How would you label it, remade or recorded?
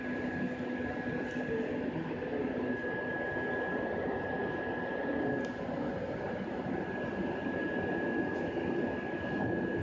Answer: recorded